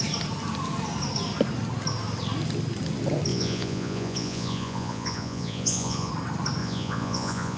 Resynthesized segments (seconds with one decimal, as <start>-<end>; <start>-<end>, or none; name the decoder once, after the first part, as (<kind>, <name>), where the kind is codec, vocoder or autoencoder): 3.3-6.1 (vocoder, Vocos); 6.6-7.6